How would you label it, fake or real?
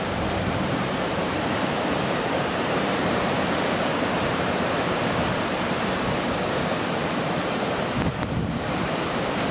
fake